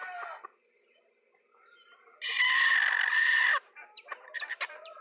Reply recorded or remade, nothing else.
recorded